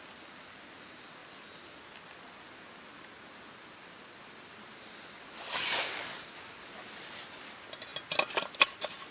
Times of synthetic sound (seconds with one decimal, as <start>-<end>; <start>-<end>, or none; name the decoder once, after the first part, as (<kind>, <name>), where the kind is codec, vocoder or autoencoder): none